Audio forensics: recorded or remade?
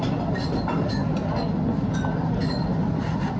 recorded